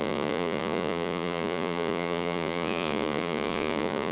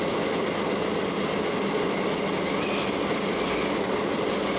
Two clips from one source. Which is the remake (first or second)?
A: first